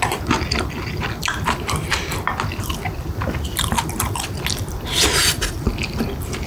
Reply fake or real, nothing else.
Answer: real